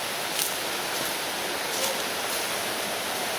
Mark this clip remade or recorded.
recorded